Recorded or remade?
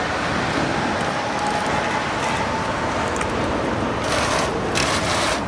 recorded